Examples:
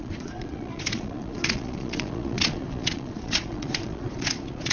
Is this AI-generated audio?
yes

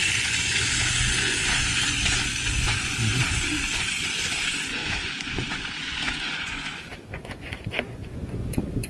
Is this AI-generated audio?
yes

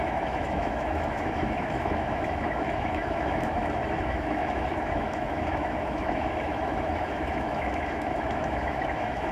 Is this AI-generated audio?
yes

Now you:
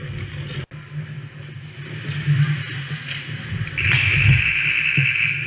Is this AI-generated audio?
no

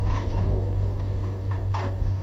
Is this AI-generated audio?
yes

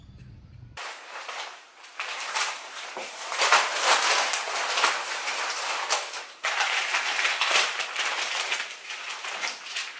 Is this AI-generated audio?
yes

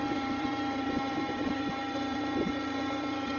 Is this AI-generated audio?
yes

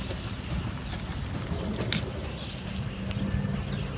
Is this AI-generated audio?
no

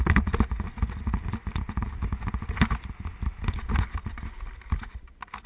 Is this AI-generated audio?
no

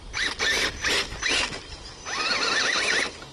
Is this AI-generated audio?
no